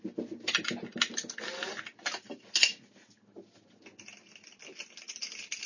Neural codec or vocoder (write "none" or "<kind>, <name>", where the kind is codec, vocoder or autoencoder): none